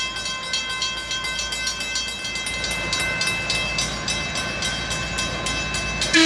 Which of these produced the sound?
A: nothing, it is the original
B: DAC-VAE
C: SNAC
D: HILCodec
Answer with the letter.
A